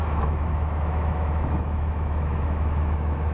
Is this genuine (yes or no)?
no